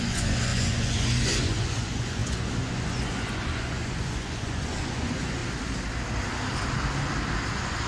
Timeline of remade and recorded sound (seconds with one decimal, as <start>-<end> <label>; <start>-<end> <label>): 0.0-5.4 remade; 5.4-7.5 recorded; 7.5-7.9 remade